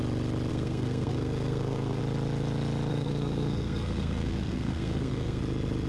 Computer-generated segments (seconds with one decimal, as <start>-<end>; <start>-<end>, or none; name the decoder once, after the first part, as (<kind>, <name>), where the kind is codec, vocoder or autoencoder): 0.5-2.0 (codec, SNAC); 2.9-5.4